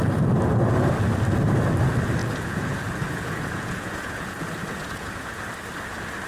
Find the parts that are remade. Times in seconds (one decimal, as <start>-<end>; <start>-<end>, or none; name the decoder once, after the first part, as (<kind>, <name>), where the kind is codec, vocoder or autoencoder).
2.2-5.4 (vocoder, Vocos)